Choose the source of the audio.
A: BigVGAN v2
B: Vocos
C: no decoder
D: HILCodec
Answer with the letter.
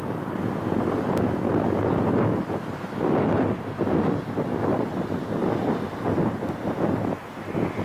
C